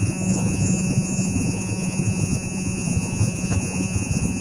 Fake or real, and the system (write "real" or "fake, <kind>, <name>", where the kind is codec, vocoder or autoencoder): fake, vocoder, Vocos